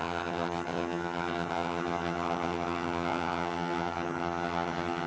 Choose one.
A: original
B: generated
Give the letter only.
B